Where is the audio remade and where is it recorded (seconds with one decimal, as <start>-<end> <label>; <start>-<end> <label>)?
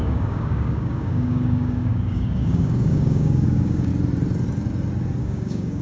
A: 0.0-3.9 remade; 3.9-5.2 recorded; 5.2-5.8 remade